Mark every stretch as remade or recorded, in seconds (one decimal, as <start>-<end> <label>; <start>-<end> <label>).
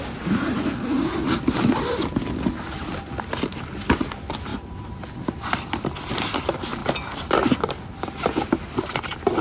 0.0-4.5 recorded; 4.5-5.2 remade; 5.2-9.4 recorded